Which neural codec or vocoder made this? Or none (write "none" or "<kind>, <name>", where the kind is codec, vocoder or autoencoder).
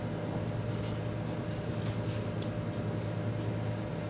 none